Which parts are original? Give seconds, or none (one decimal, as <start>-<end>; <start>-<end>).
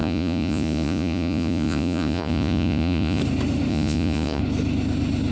3.2-3.7; 4.4-5.3